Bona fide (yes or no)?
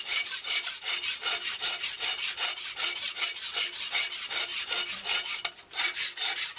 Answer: yes